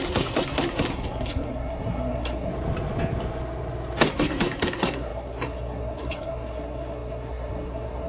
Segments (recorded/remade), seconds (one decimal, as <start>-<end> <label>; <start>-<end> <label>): 0.0-2.5 remade; 2.5-4.1 recorded; 4.1-8.1 remade